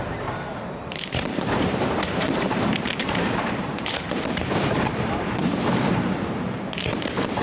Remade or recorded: remade